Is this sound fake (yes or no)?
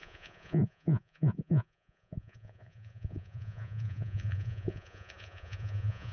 yes